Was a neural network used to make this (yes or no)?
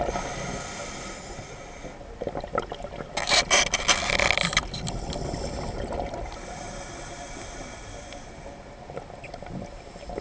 no